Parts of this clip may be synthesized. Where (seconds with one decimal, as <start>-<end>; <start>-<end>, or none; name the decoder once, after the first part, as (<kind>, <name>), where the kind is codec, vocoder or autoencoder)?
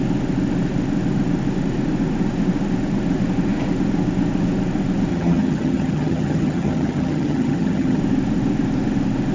5.1-8.0 (vocoder, HiFi-GAN)